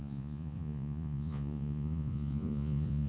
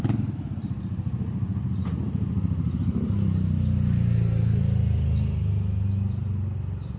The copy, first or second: first